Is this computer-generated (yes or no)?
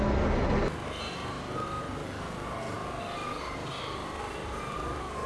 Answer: no